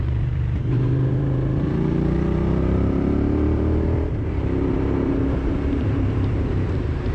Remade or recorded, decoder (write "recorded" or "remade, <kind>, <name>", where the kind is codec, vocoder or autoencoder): remade, vocoder, BigVGAN v2